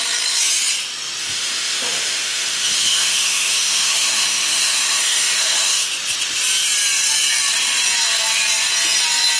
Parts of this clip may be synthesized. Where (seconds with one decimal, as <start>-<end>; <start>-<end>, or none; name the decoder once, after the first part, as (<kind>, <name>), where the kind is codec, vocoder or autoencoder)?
1.2-5.9 (autoencoder, DAC-VAE)